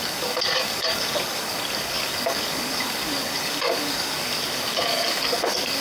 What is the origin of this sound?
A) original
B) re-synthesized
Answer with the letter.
B